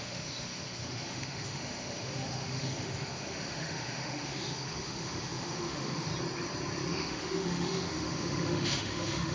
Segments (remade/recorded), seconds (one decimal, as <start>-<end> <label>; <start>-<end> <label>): 0.0-6.1 remade; 6.1-6.9 recorded; 6.9-9.3 remade